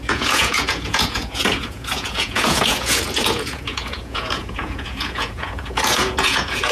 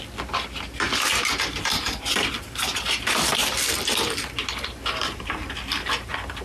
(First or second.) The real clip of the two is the second